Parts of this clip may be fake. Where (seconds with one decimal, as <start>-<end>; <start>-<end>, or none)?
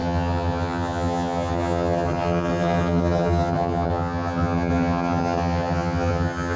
0.0-6.6